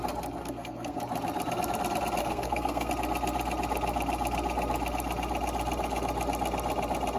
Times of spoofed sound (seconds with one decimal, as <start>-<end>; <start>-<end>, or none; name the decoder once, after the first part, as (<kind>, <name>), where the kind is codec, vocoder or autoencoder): 0.4-1.0 (codec, SNAC); 2.2-2.9